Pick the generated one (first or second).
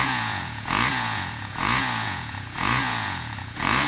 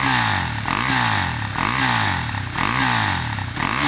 first